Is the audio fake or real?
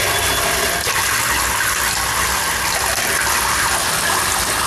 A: real